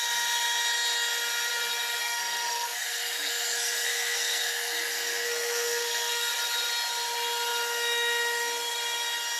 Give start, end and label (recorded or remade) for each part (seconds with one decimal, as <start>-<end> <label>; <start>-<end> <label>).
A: 0.0-2.0 recorded; 2.0-6.3 remade; 6.3-9.4 recorded